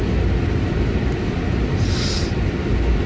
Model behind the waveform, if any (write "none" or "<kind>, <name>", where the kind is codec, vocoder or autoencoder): none